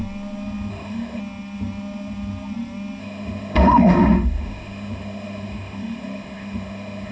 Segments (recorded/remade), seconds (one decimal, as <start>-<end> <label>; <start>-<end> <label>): 0.0-0.7 recorded; 0.7-1.2 remade; 1.2-3.0 recorded; 3.0-7.1 remade